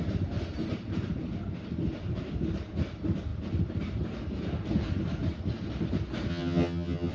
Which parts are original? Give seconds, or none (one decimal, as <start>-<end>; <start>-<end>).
0.0-6.3